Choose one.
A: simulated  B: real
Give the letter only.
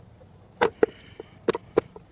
B